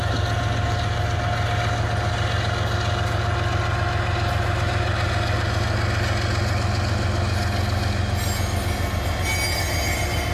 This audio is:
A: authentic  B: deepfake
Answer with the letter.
A